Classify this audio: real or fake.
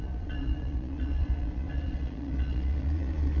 fake